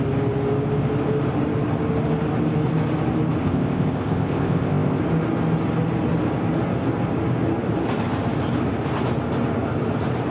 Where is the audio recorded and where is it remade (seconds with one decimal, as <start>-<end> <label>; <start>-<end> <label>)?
0.0-3.4 recorded; 3.4-5.0 remade; 5.0-10.3 recorded